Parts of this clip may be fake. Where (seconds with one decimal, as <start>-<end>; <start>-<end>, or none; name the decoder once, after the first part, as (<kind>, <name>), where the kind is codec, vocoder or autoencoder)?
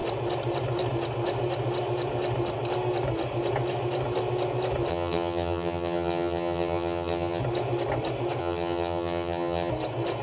4.9-7.4 (vocoder, HiFi-GAN); 8.4-9.7